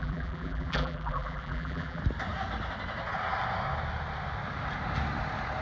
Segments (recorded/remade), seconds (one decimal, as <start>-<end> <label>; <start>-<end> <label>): 0.0-2.0 remade; 2.0-5.6 recorded